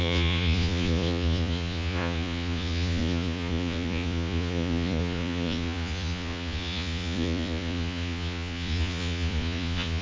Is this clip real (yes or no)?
no